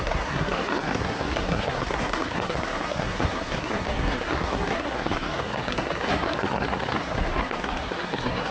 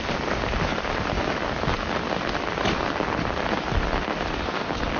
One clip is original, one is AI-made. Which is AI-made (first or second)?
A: first